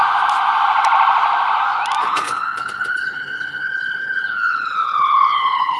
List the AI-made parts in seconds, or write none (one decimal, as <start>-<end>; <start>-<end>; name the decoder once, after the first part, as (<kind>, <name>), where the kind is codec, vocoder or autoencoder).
2.0-5.8 (codec, HILCodec)